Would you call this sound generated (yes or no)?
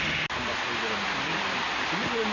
no